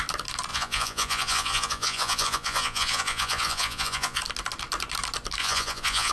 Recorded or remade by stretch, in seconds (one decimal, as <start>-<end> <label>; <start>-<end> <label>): 0.0-0.5 recorded; 0.5-4.2 remade; 4.2-5.4 recorded; 5.4-6.1 remade